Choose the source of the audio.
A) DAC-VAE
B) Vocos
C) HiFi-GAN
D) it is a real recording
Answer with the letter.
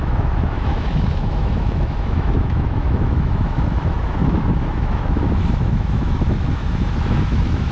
A